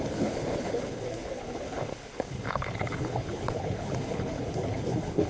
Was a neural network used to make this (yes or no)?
yes